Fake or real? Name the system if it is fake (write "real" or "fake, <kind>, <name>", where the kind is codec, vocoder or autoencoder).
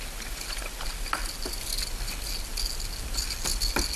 real